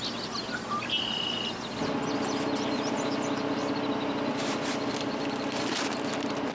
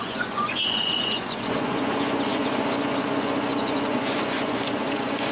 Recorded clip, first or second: first